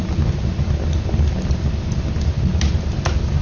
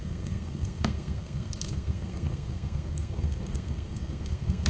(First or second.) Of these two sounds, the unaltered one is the first